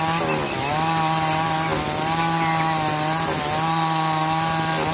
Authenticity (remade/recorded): recorded